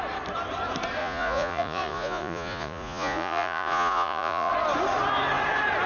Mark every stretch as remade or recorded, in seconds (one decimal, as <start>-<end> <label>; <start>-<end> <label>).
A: 0.0-1.0 recorded; 1.0-4.5 remade; 4.5-5.9 recorded